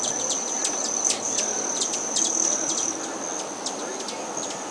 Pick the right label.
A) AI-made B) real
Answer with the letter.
B